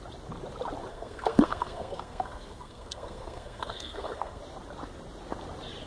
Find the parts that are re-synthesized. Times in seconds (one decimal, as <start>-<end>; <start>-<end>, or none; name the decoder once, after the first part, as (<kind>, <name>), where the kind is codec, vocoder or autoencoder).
0.9-4.4 (codec, SNAC)